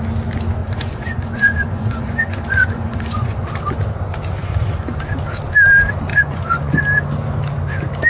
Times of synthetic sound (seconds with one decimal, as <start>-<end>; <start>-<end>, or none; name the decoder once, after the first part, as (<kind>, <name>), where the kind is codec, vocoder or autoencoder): 0.6-3.5 (vocoder, Vocos); 4.4-5.0; 6.1-6.8